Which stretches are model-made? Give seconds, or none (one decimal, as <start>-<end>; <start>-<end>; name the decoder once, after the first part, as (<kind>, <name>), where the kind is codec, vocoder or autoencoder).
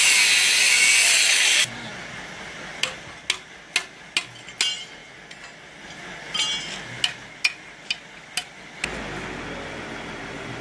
none